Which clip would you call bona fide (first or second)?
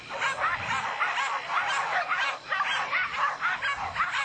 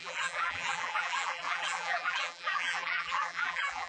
first